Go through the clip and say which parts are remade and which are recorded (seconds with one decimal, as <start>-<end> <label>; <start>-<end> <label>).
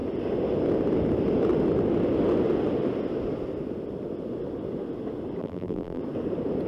0.0-5.4 recorded; 5.4-6.0 remade; 6.0-6.7 recorded